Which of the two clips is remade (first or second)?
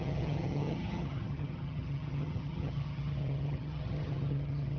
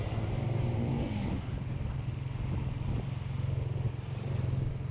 first